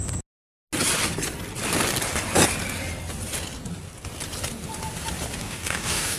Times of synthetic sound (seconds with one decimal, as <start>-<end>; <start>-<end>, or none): 5.4-6.2